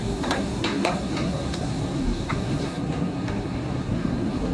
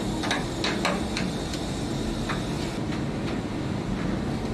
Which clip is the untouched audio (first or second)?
second